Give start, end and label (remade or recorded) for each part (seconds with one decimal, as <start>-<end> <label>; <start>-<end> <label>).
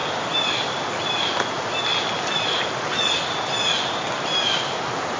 0.0-5.2 recorded